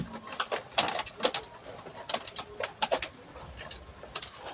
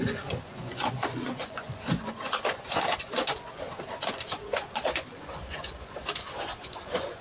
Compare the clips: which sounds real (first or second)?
first